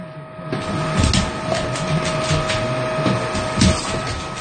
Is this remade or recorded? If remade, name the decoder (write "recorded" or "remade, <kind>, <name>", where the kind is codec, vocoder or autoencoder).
recorded